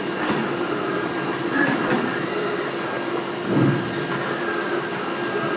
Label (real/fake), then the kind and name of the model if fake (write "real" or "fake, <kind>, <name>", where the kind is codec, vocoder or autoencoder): real